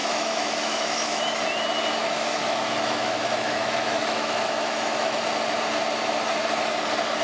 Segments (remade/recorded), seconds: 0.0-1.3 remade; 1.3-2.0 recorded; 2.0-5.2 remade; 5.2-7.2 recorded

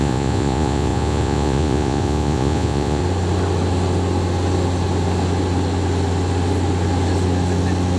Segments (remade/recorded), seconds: 0.0-3.0 remade; 3.0-8.0 recorded

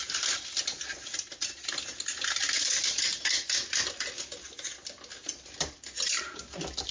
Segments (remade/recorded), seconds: 0.0-6.9 recorded

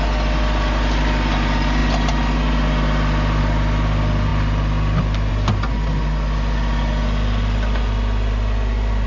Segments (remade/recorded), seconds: 0.0-9.1 recorded

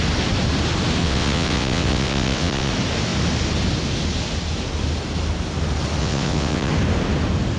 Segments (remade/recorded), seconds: 0.0-1.0 recorded; 1.0-2.7 remade; 2.7-6.0 recorded; 6.0-6.7 remade; 6.7-7.6 recorded